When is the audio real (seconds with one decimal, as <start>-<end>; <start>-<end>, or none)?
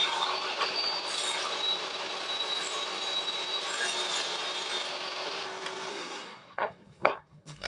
0.0-5.9